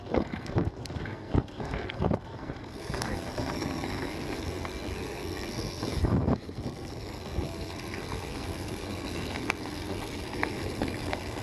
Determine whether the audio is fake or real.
fake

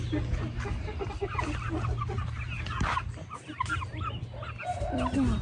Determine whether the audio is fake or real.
real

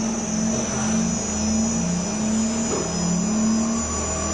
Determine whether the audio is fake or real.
real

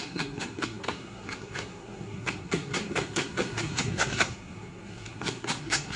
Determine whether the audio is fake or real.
fake